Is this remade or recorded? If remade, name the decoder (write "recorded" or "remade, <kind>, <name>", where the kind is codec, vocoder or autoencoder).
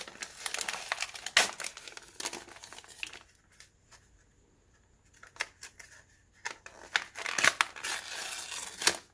recorded